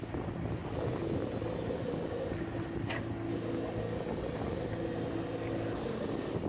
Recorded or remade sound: recorded